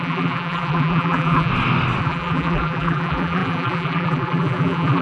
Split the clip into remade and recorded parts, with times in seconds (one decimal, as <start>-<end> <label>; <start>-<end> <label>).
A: 0.0-1.5 remade; 1.5-2.0 recorded; 2.0-5.0 remade